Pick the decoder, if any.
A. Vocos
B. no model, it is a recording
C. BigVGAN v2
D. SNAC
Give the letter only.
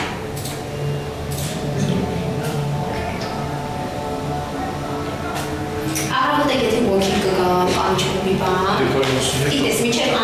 B